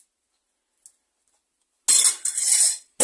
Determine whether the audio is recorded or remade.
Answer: recorded